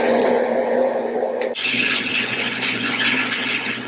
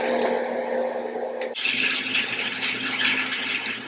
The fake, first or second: first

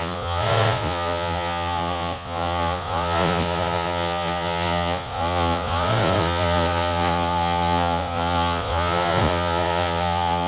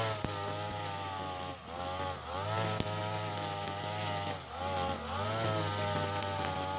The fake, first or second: first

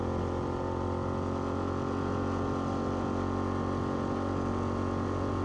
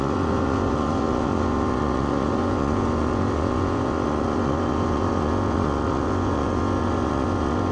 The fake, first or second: second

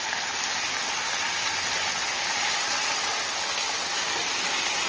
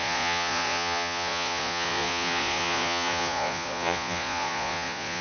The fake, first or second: second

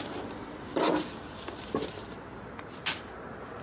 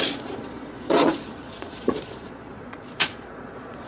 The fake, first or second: second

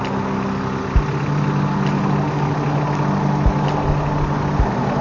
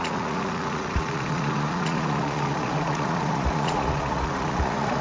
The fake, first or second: second